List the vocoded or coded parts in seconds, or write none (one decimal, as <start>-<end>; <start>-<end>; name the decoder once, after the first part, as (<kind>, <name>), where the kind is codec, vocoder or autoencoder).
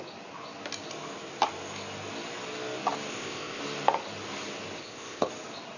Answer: 3.1-3.6 (codec, ZipCodec); 4.8-5.3